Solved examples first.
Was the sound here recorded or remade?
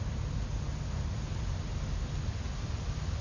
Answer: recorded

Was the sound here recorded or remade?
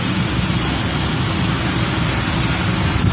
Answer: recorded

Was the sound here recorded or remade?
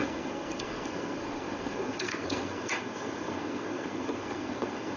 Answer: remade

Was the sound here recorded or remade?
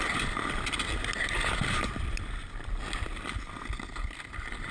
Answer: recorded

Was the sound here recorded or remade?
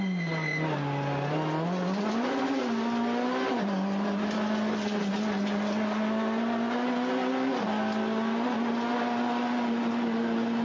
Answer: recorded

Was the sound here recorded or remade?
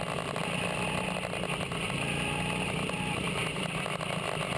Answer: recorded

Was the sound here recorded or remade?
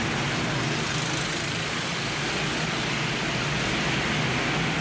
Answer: recorded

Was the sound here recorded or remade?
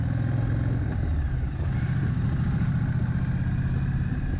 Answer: recorded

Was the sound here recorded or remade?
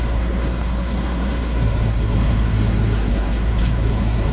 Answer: remade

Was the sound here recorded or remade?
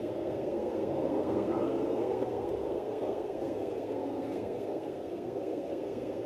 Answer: remade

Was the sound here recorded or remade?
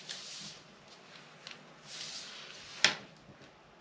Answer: recorded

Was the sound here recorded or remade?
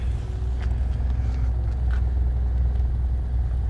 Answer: recorded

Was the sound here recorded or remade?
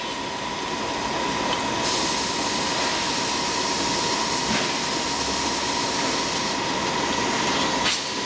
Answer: recorded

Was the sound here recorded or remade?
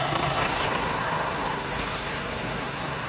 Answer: remade